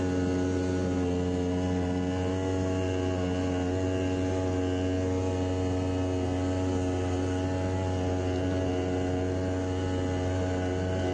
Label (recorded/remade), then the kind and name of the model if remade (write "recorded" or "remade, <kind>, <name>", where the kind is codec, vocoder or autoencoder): recorded